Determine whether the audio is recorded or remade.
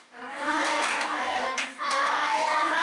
remade